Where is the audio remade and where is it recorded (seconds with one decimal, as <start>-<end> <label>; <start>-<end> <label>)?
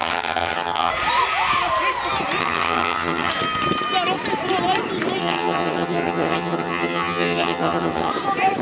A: 0.0-0.9 remade; 0.9-2.4 recorded; 2.4-3.3 remade; 3.3-5.2 recorded; 5.2-8.1 remade; 8.1-8.6 recorded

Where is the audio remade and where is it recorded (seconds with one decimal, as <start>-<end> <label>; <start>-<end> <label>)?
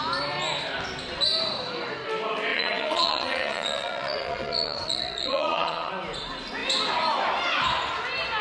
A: 0.0-2.5 recorded; 2.5-5.9 remade; 5.9-8.4 recorded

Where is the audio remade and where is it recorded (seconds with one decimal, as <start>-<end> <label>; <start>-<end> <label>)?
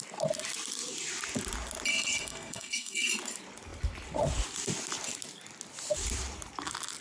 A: 0.0-1.9 recorded; 1.9-3.1 remade; 3.1-7.0 recorded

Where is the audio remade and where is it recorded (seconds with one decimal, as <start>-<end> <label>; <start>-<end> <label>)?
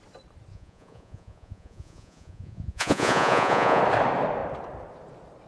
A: 0.0-0.5 recorded; 0.5-3.8 remade; 3.8-5.5 recorded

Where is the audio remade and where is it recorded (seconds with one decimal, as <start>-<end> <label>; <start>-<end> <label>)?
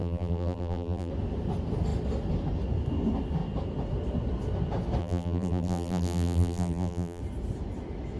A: 0.0-1.1 remade; 1.1-5.0 recorded; 5.0-7.2 remade; 7.2-8.2 recorded